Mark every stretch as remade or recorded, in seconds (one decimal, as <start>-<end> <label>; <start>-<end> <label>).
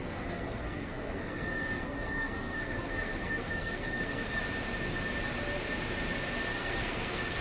0.0-4.4 remade; 4.4-6.5 recorded; 6.5-7.4 remade